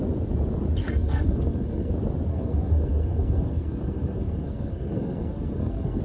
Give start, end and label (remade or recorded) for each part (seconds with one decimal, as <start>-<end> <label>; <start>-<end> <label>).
0.0-0.8 recorded; 0.8-1.9 remade; 1.9-2.3 recorded; 2.3-6.0 remade